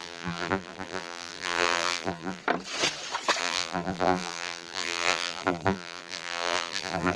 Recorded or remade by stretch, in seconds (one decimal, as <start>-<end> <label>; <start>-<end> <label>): 0.0-2.4 remade; 2.4-3.4 recorded; 3.4-7.2 remade